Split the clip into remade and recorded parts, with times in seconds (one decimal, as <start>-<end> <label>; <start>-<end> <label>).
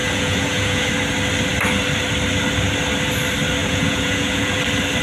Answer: 0.0-0.9 remade; 0.9-3.6 recorded; 3.6-4.6 remade; 4.6-5.0 recorded